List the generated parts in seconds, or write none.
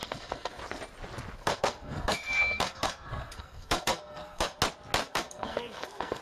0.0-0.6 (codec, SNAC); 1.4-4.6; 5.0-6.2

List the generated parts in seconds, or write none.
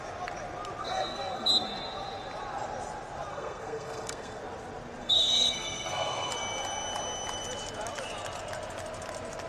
0.8-1.5 (codec, SNAC); 3.3-4.4; 5.0-6.3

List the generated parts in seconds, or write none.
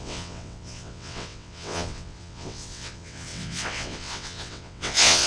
0.0-5.3 (vocoder, WaveNeXt)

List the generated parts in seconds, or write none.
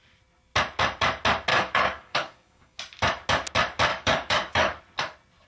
1.5-2.8 (codec, DAC); 3.9-4.8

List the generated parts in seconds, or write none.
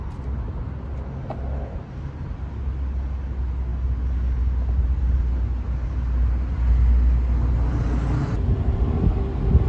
none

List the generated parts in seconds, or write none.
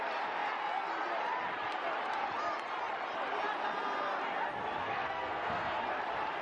4.8-5.8 (codec, SNAC)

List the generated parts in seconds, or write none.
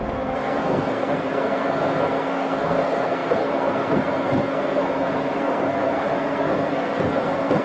0.0-7.6 (codec, SNAC)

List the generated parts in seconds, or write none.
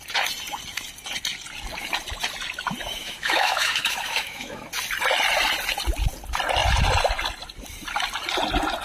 3.0-4.6 (autoencoder, DAC-VAE)